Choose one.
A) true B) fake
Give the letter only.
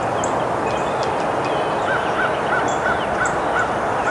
A